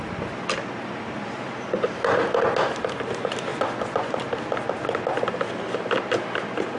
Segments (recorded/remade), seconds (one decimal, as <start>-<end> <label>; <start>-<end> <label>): 0.0-3.5 recorded; 3.5-4.1 remade; 4.1-6.8 recorded